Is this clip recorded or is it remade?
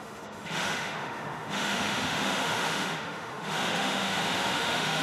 remade